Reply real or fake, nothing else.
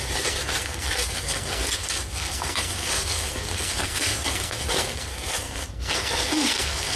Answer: fake